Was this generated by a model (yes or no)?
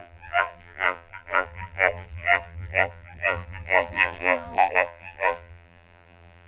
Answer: yes